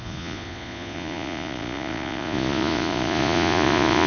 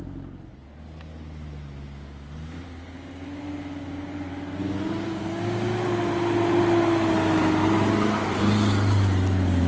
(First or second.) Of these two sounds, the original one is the second